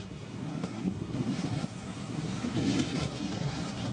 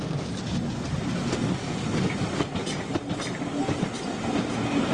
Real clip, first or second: second